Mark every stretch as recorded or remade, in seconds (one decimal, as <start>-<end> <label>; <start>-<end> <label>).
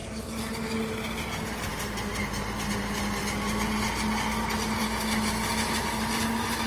0.0-0.5 remade; 0.5-6.7 recorded